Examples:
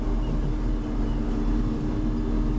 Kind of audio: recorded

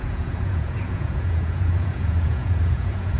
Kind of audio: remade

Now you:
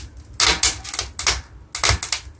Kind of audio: recorded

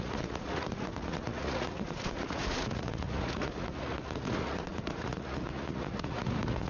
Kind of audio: remade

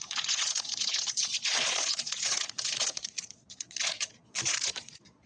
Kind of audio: remade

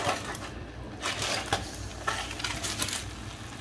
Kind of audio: recorded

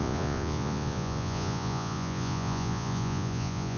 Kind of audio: remade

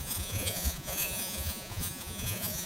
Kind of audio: remade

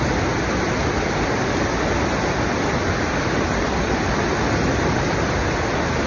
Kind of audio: recorded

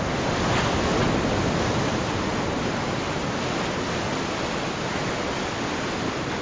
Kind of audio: recorded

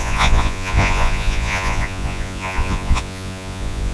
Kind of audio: remade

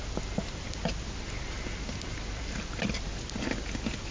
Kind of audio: recorded